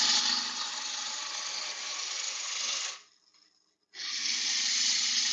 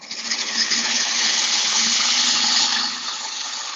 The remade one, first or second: second